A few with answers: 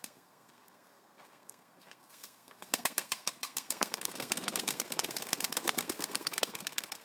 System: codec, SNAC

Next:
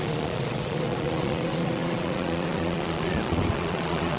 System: vocoder, Vocos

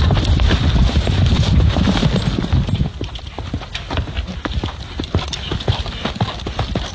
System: none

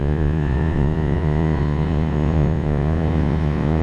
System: vocoder, Vocos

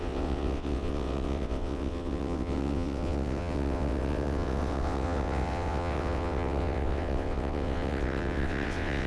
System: vocoder, WaveNeXt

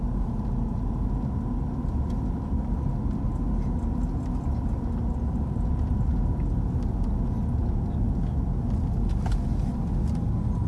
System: none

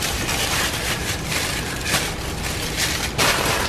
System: vocoder, BigVGAN v2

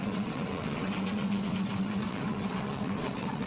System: vocoder, WaveNeXt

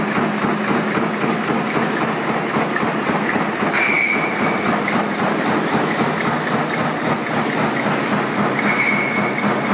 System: none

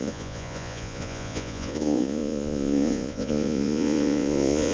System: vocoder, Vocos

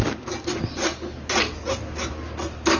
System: none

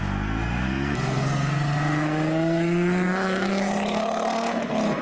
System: codec, SNAC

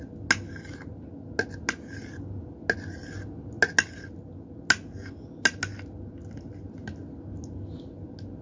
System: none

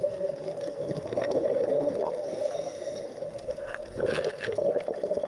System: codec, SNAC